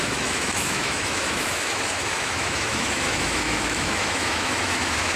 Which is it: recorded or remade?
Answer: remade